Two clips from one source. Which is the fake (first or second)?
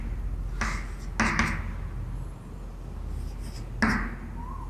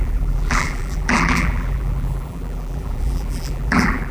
second